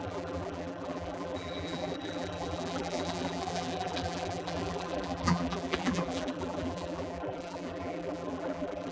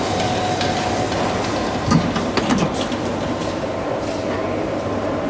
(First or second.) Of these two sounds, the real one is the second